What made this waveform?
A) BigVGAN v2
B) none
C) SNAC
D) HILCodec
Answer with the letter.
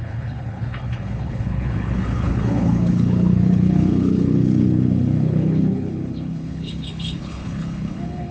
D